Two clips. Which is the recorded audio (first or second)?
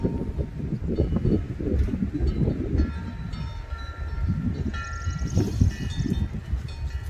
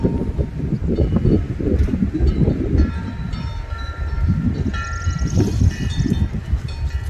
first